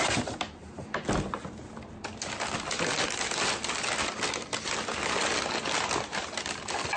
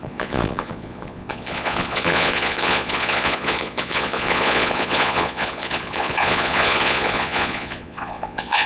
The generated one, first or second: second